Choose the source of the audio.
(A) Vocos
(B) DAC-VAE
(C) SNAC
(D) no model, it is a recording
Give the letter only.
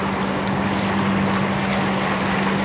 D